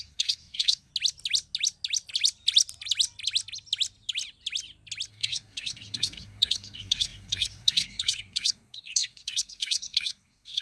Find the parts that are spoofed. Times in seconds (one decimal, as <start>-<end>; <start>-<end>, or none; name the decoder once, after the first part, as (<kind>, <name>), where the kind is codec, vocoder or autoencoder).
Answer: 0.0-0.9 (codec, SNAC); 5.1-10.6